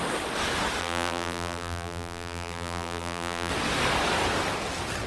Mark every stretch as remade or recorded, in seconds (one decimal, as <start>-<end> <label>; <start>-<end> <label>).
0.0-0.8 recorded; 0.8-3.5 remade; 3.5-5.1 recorded